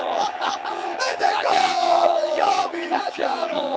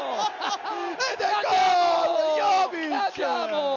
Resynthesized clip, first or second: first